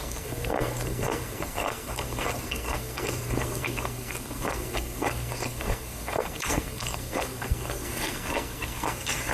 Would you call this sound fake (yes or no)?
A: yes